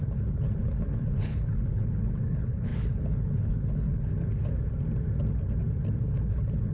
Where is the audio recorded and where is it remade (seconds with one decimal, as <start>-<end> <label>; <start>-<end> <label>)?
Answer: 0.0-4.1 remade; 4.1-6.0 recorded; 6.0-6.7 remade